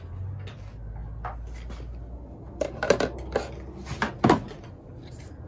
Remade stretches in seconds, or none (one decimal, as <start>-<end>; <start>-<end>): none